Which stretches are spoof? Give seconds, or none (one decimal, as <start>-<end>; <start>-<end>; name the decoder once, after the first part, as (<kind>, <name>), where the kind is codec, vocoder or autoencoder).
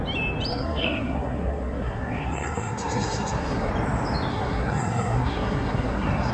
0.5-3.7 (codec, SNAC); 4.3-6.3